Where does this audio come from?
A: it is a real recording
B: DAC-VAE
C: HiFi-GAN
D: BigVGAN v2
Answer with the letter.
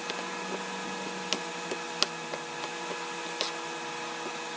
A